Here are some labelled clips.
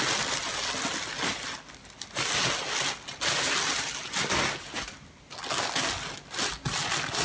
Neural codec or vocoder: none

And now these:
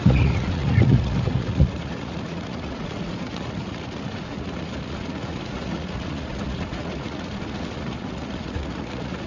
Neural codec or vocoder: vocoder, Vocos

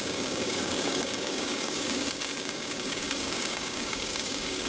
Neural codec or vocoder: codec, DAC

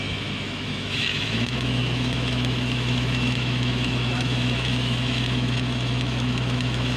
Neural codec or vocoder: autoencoder, DAC-VAE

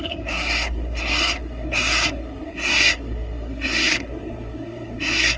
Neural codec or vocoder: codec, SNAC